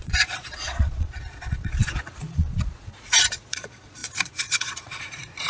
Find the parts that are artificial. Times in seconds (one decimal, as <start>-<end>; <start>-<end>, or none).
0.0-5.5